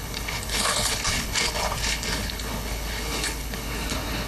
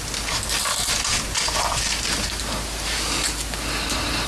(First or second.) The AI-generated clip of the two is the first